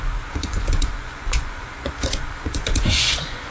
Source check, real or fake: fake